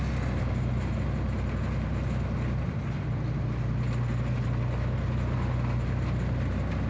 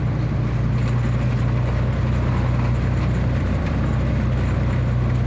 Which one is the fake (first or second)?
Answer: second